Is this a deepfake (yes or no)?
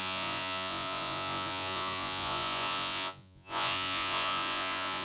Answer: yes